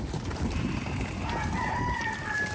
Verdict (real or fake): real